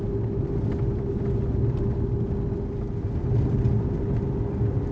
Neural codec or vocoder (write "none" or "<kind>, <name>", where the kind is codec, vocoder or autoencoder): none